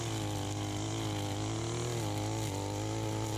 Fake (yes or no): no